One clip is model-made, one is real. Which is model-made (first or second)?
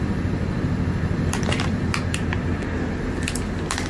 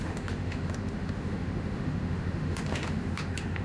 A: second